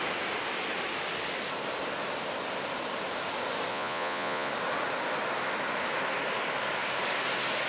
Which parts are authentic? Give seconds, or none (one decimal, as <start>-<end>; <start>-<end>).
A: 0.0-3.7; 4.5-7.7